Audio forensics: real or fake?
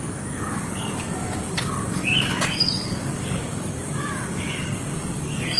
fake